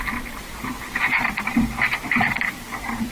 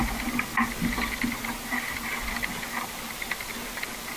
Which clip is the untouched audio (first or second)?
second